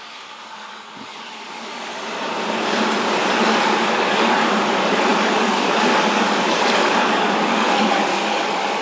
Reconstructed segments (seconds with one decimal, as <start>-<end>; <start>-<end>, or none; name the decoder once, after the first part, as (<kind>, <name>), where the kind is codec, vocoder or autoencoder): 0.0-1.9 (codec, DAC); 3.3-8.8